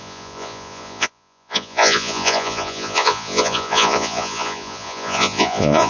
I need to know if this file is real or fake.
fake